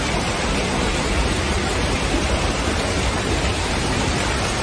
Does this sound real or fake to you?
fake